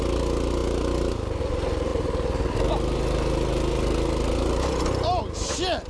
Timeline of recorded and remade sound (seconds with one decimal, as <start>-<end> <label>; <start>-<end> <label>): 0.0-5.9 recorded